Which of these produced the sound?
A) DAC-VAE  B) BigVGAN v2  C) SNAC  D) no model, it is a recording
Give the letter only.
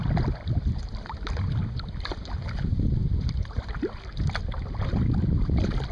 B